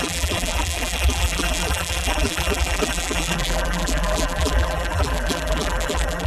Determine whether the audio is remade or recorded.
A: remade